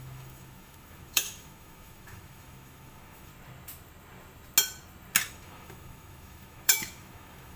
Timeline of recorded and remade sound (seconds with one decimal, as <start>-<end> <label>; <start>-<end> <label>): 0.0-3.3 remade; 3.3-5.3 recorded; 5.3-7.6 remade